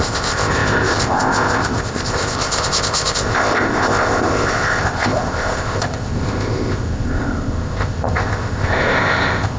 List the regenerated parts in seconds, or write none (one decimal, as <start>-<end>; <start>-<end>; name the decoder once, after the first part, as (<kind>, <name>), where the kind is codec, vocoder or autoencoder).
0.0-9.6 (codec, ZipCodec)